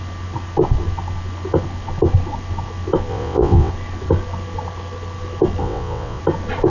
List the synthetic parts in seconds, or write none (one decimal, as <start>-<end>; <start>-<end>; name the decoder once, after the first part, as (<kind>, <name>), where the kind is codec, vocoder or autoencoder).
3.1-3.7 (vocoder, WaveNeXt); 5.6-6.2